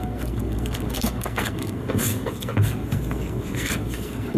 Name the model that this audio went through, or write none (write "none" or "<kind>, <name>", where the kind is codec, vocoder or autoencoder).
codec, SNAC